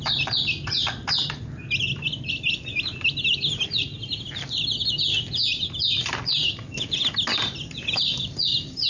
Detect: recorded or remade recorded